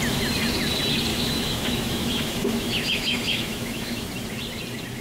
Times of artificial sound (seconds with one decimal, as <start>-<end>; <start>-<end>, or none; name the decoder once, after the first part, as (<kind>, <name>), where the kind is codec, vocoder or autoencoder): 1.1-4.1 (autoencoder, DAC-VAE)